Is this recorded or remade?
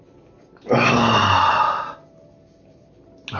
recorded